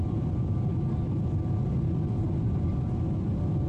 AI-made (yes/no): no